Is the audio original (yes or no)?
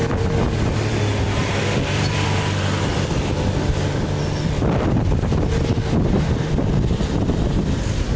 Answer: no